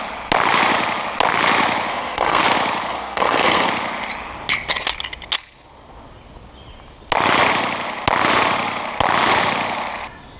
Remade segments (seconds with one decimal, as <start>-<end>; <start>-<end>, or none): 1.9-2.4; 2.9-3.7